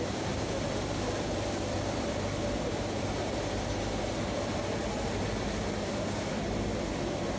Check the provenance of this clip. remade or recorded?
recorded